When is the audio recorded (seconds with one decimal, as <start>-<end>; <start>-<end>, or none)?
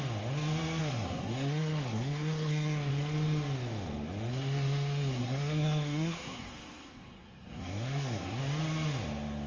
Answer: 0.0-0.8; 2.9-4.3; 8.4-9.5